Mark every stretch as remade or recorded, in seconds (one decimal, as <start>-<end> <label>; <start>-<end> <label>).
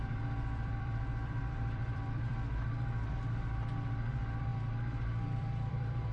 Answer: 0.0-2.3 remade; 2.3-4.1 recorded; 4.1-4.5 remade; 4.5-5.4 recorded; 5.4-6.1 remade